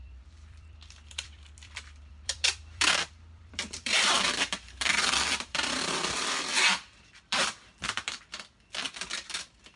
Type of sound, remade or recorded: remade